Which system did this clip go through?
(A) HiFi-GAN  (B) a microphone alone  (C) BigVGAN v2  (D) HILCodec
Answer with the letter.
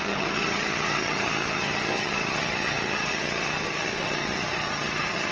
A